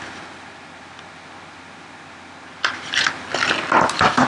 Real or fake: real